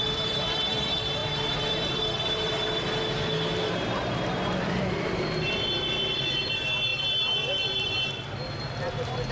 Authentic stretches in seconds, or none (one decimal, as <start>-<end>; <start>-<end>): none